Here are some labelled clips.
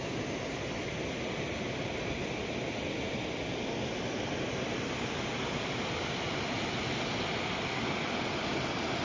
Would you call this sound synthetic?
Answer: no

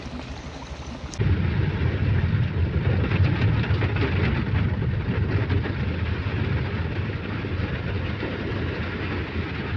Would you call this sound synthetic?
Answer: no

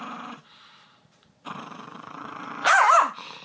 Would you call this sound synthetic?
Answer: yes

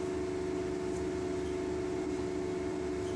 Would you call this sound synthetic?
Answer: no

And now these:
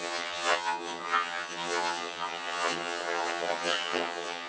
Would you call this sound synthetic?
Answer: yes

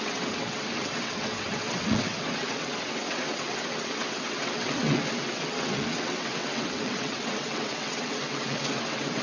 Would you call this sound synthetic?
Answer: yes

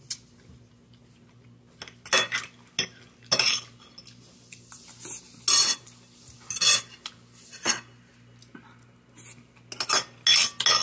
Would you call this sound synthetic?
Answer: no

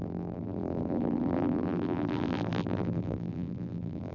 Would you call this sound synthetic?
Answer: yes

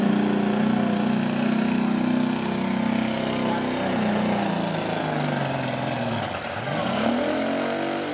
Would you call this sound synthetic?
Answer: no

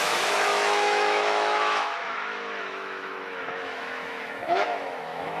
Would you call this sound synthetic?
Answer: yes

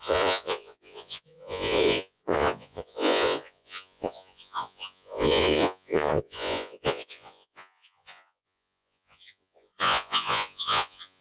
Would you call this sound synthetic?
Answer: yes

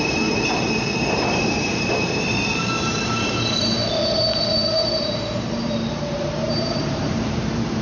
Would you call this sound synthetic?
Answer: yes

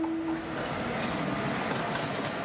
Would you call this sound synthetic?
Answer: no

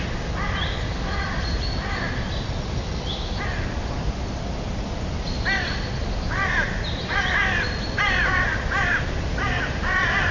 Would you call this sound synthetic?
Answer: no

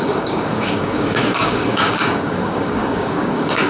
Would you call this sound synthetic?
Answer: yes